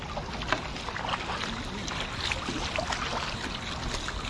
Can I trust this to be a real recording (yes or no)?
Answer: yes